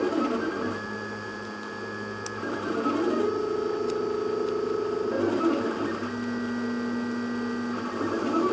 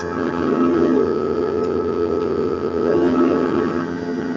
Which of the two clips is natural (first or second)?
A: first